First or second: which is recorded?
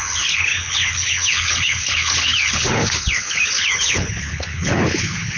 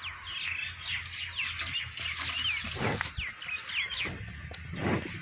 second